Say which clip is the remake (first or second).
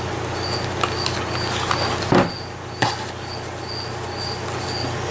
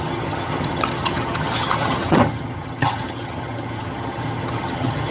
second